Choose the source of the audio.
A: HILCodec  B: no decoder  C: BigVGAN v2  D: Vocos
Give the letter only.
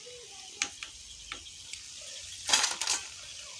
B